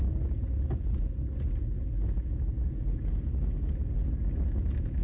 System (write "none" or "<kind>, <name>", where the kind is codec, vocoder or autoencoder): none